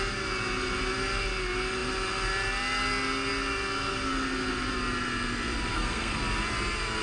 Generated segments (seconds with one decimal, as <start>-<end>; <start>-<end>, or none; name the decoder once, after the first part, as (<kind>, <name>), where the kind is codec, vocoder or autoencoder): 5.7-6.2 (codec, SNAC)